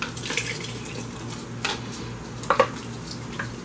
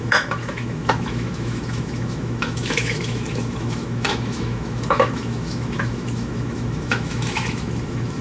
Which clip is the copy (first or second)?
second